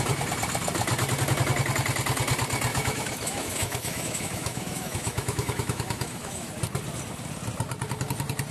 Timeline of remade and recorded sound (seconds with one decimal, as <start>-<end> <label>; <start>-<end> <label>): 0.0-2.7 recorded; 2.7-6.5 remade; 6.5-8.5 recorded